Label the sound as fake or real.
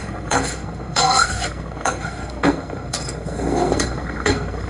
fake